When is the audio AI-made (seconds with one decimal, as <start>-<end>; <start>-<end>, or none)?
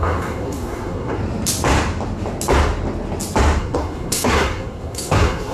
0.0-1.2; 3.6-5.5